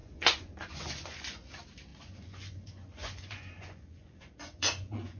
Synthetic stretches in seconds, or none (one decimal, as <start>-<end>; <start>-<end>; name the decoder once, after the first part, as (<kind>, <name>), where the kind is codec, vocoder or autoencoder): 0.0-1.5 (vocoder, Vocos); 1.9-5.2